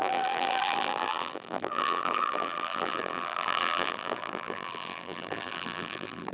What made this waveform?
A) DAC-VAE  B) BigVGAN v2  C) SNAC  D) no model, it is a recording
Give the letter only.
B